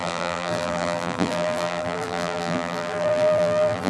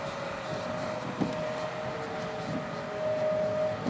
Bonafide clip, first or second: second